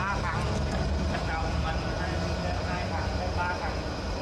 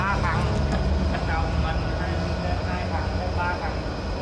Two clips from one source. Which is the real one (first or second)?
second